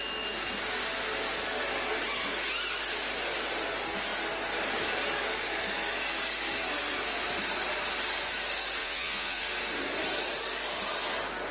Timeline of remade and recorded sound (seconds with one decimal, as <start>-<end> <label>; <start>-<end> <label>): 0.0-8.8 recorded; 8.8-9.4 remade; 9.4-11.5 recorded